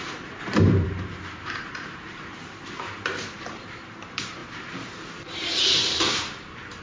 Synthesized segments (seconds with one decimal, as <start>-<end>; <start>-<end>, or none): 0.0-6.8